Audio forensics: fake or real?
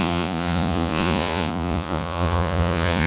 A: fake